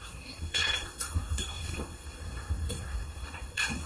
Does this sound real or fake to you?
fake